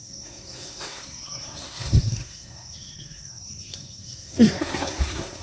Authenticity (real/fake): fake